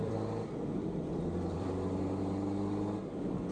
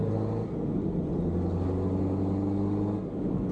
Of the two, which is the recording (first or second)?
second